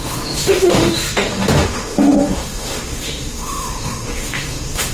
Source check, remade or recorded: remade